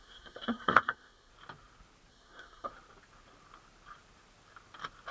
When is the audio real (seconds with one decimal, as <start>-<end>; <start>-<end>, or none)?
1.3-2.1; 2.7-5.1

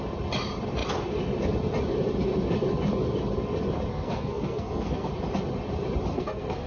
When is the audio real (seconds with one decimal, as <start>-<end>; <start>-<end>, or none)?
0.0-3.9; 5.1-6.1

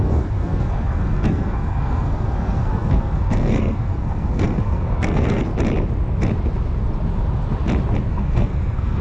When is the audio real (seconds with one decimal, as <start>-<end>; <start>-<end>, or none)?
5.5-8.1

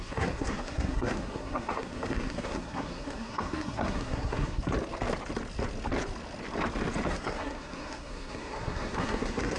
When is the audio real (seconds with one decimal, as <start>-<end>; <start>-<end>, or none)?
4.6-7.1

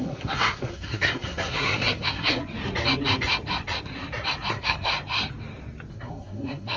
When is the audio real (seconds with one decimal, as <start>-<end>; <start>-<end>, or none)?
2.4-4.5; 4.9-5.9

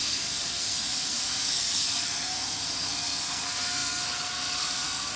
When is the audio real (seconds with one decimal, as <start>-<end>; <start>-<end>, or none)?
none

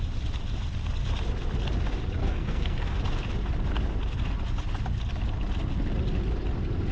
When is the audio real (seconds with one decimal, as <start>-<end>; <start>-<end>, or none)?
0.0-2.2; 3.0-6.9

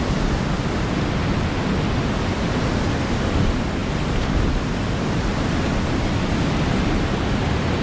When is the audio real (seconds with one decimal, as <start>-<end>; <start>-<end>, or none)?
0.0-7.8